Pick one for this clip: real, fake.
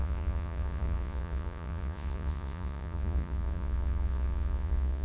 fake